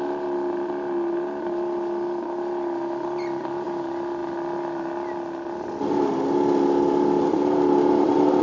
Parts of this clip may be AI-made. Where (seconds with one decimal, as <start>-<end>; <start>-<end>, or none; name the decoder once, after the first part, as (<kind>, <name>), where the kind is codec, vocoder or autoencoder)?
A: none